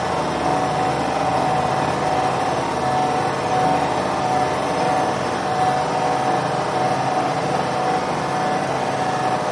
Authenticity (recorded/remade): recorded